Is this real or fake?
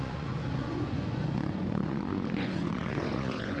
fake